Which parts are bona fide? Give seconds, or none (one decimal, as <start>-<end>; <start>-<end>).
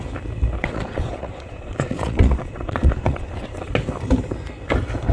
0.0-0.6; 3.7-5.1